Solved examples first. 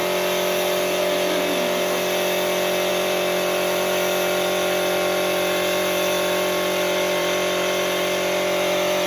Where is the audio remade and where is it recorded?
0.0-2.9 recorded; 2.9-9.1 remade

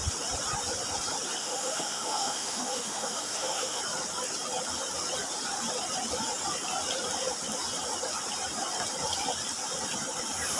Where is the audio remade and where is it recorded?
0.0-1.4 recorded; 1.4-3.8 remade; 3.8-10.6 recorded